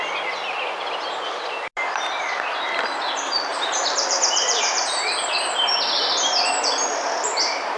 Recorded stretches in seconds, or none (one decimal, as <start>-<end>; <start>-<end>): 0.0-3.5